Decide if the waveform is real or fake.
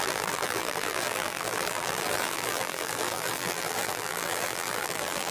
fake